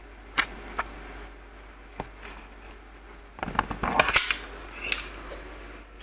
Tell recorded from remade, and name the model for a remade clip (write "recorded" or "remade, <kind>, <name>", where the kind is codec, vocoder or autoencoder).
recorded